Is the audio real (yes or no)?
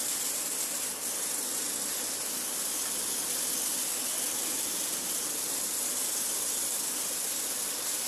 yes